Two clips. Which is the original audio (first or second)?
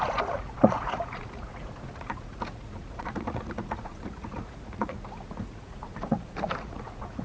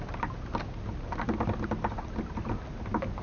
second